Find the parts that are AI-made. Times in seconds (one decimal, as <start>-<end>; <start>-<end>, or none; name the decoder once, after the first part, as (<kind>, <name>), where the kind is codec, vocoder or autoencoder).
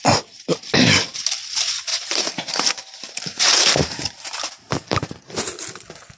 1.9-5.4 (vocoder, BigVGAN v2)